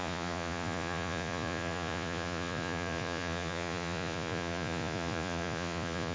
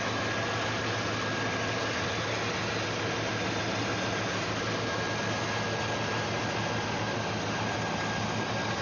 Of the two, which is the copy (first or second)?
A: first